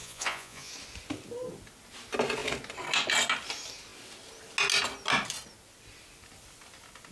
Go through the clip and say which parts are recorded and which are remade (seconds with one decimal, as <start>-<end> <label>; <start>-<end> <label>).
0.0-0.7 remade; 0.7-7.1 recorded